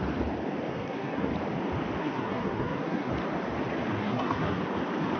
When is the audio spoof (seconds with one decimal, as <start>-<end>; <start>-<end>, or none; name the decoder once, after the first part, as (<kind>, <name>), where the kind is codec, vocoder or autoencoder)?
0.7-1.3 (codec, SNAC); 2.0-3.1; 4.0-4.6